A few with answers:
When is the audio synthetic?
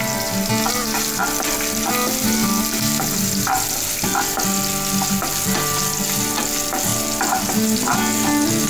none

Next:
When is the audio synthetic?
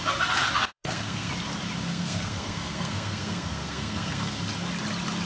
0.7-1.3 (codec, SNAC); 1.9-4.4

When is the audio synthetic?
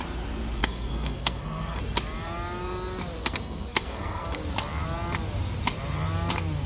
0.6-1.8 (codec, SNAC); 3.2-4.4